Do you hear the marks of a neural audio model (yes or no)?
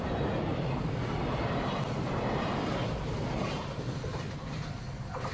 no